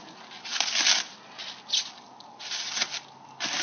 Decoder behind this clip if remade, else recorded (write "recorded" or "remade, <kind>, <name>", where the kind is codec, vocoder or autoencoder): recorded